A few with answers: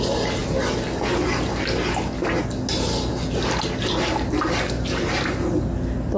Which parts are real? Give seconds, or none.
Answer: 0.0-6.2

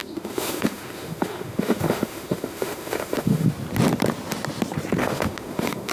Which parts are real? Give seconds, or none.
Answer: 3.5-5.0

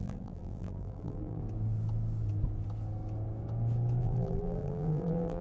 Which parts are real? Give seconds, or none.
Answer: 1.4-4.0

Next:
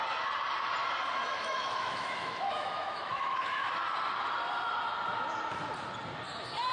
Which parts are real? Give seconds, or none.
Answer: 0.0-1.3; 3.7-6.7

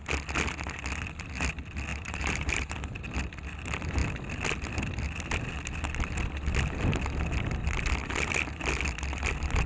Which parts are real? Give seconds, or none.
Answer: 0.0-1.9; 2.7-9.7

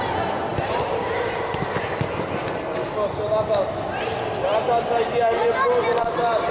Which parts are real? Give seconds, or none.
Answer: 4.5-6.0

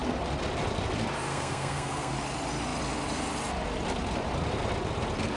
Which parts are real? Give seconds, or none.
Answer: 0.0-1.3; 2.1-5.4

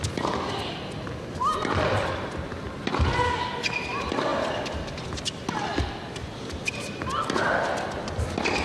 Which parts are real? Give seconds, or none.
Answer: 0.0-8.6